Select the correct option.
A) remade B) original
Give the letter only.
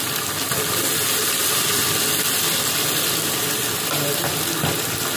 B